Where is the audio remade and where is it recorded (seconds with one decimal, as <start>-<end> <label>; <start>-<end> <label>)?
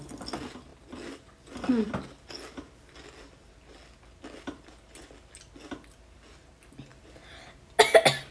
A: 0.0-8.3 recorded